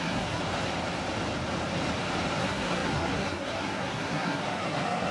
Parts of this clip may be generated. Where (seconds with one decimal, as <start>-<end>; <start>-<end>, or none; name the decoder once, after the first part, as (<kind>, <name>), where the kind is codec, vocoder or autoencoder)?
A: 0.0-0.4 (codec, SNAC); 2.4-5.1